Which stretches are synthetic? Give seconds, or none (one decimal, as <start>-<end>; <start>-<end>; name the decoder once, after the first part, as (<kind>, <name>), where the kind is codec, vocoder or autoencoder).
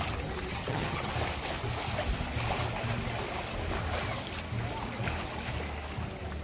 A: 0.5-1.1 (vocoder, HiFi-GAN)